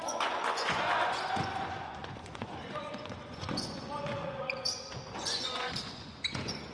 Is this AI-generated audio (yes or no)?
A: yes